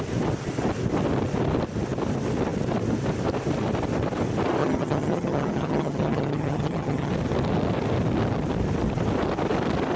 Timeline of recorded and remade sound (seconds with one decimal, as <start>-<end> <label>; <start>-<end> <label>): 0.0-4.6 recorded; 4.6-7.1 remade; 7.1-10.0 recorded